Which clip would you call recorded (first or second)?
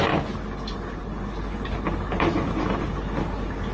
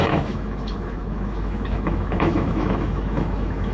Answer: first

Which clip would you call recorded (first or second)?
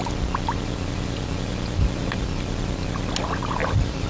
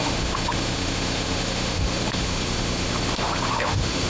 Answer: first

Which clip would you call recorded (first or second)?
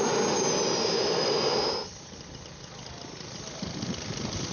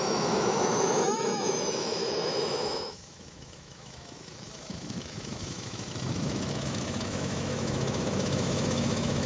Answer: first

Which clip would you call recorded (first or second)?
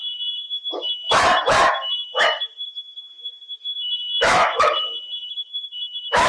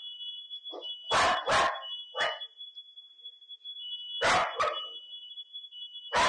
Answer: second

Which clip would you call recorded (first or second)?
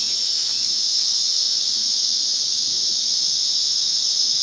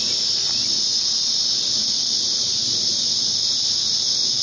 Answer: second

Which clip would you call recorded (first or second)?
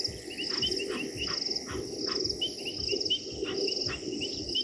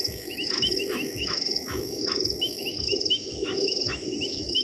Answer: first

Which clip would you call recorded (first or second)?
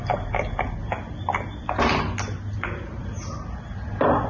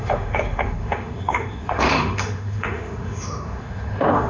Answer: first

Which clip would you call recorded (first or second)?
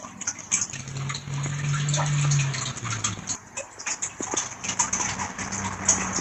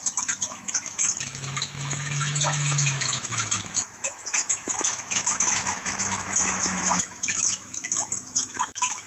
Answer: first